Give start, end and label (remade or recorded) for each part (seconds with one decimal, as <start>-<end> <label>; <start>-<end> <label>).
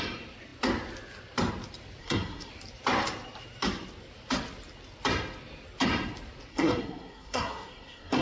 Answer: 0.0-2.0 recorded; 2.0-2.5 remade; 2.5-6.5 recorded; 6.5-8.2 remade